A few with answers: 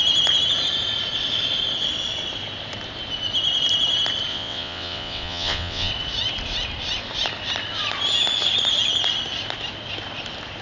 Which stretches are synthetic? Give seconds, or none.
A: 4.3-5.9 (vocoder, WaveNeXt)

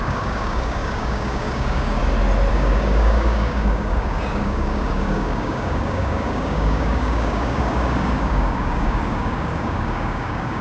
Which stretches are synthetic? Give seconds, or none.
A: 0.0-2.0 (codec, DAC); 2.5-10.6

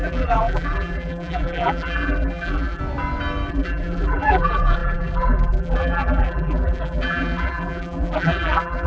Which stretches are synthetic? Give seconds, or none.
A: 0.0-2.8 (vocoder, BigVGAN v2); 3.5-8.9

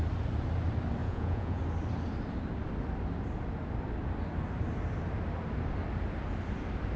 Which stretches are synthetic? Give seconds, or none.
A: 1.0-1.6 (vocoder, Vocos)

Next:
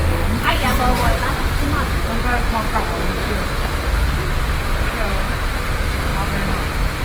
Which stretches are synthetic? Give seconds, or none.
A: 0.0-2.0 (vocoder, BigVGAN v2)

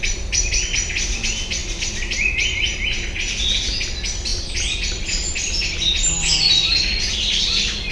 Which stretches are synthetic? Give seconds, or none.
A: none

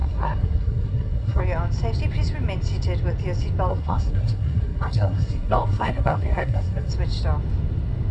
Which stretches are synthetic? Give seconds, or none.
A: 0.0-1.4 (codec, SNAC); 3.7-6.9

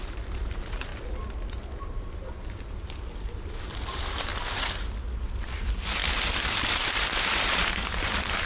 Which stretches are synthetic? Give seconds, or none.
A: 0.0-0.9 (vocoder, BigVGAN v2); 1.8-4.3; 5.4-8.4